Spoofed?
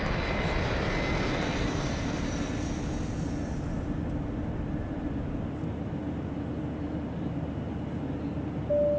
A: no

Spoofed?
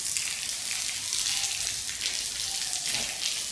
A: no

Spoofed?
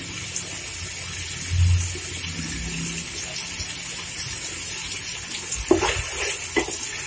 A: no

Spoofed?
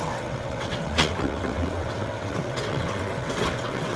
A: yes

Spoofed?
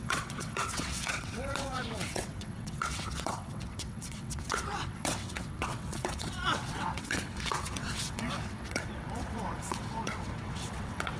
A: yes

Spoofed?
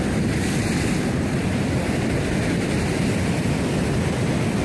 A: no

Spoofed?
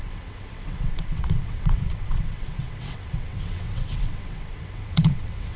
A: yes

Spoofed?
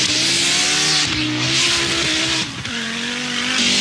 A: no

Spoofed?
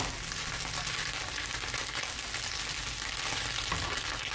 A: no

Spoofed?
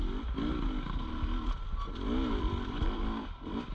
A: no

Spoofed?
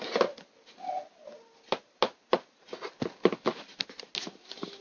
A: no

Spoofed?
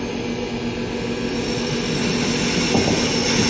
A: no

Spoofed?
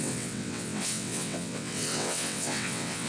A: yes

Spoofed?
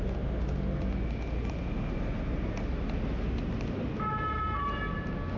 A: no